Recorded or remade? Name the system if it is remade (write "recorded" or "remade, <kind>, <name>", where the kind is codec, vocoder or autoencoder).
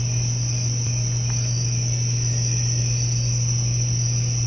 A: recorded